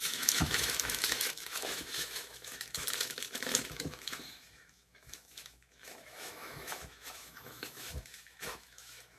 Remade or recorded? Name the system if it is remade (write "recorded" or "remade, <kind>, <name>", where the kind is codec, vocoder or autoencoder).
remade, autoencoder, DAC-VAE